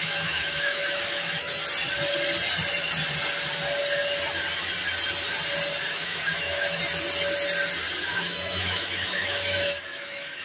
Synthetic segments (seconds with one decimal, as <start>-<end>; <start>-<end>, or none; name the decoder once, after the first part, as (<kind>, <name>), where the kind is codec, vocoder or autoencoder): 0.0-1.6 (autoencoder, DAC-VAE); 5.9-6.8; 8.1-10.4